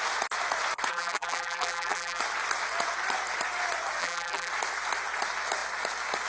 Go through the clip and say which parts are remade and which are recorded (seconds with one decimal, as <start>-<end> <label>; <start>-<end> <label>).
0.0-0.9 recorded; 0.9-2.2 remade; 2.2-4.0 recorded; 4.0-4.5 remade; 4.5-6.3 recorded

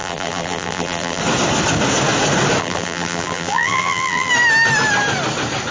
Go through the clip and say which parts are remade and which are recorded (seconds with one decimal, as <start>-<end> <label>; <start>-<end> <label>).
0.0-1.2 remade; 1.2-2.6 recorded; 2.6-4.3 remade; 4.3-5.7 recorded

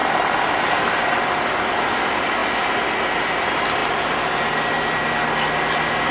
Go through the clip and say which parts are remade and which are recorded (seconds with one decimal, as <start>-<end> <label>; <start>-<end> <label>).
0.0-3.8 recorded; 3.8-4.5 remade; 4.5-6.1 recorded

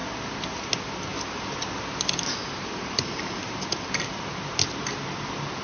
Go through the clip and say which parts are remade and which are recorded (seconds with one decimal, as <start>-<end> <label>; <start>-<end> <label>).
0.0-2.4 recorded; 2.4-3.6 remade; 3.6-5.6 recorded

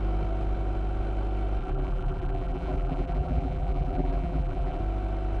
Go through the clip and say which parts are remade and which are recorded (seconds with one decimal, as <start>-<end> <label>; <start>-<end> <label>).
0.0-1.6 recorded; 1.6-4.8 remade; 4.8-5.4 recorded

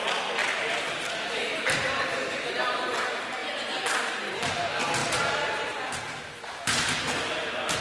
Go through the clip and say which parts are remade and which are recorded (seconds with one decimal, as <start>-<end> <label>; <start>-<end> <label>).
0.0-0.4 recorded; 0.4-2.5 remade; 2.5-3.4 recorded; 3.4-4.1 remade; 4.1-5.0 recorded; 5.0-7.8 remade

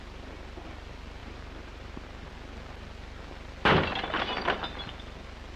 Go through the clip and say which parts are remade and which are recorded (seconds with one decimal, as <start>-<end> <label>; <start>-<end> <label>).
0.0-1.2 recorded; 1.2-2.3 remade; 2.3-5.6 recorded

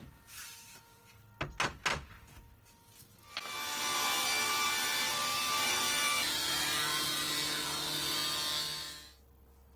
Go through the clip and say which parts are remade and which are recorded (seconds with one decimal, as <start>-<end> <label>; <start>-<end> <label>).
0.0-1.0 remade; 1.0-4.5 recorded; 4.5-8.2 remade; 8.2-9.8 recorded